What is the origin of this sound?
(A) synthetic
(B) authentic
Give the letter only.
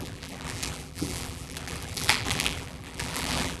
A